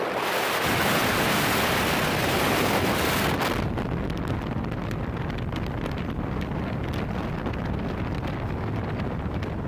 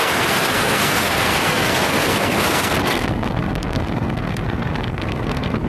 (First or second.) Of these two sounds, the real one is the first